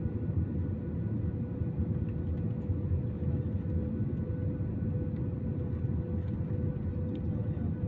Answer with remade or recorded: recorded